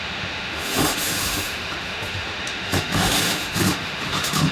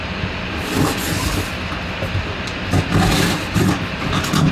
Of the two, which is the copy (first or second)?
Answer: first